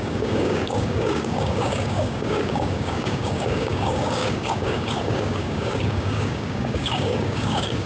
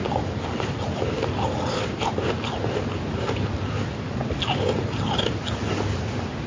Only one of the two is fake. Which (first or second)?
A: first